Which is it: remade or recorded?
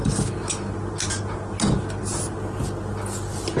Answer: recorded